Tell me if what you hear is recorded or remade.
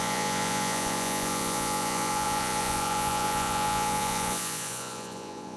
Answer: remade